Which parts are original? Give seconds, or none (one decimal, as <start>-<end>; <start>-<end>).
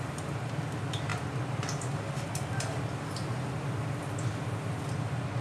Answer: 0.0-1.1; 4.3-5.4